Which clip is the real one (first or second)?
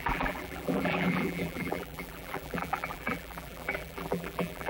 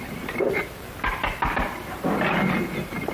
second